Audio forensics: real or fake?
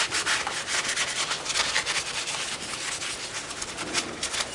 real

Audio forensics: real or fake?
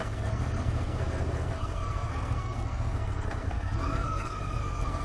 fake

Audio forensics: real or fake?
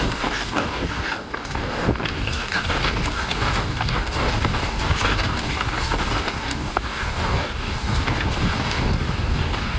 fake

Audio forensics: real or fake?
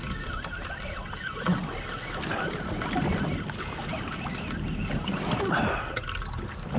real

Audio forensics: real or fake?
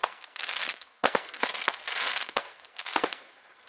fake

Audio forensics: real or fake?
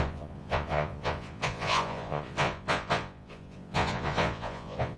fake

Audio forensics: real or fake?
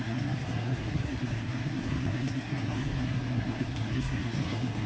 fake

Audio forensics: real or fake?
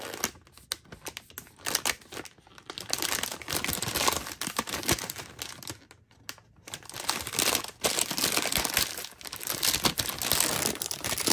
real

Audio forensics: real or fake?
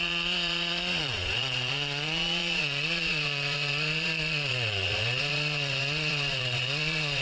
fake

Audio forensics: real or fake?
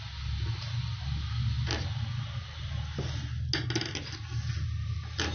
real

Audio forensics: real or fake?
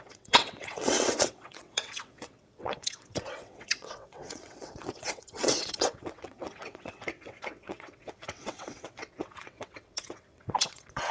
fake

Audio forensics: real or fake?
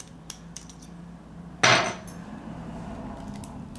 real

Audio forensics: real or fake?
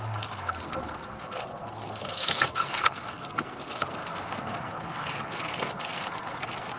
fake